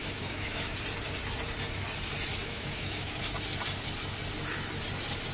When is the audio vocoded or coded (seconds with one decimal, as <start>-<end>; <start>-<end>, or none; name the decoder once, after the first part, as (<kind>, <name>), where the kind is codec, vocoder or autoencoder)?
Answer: 0.0-0.8 (autoencoder, DAC-VAE); 2.4-3.2